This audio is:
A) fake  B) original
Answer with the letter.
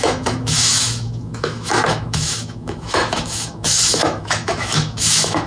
A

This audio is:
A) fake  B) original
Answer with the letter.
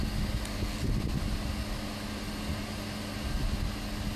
B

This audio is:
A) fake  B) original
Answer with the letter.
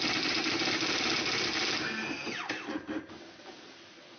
B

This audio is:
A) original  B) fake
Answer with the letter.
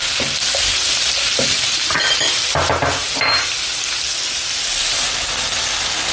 A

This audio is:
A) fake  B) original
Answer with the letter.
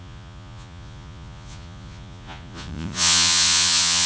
A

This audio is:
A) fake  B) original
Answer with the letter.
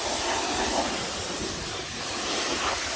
B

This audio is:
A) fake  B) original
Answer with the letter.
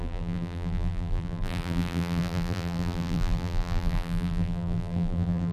A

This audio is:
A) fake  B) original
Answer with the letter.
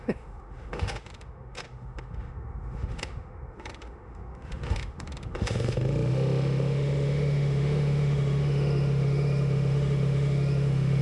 A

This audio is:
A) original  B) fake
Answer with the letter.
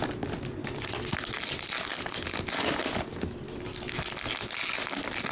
A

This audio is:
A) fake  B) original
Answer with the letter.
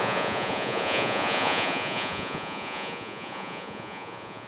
A